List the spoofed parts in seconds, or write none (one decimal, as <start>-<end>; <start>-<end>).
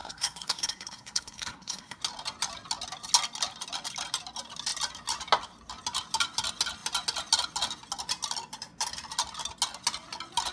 0.0-2.0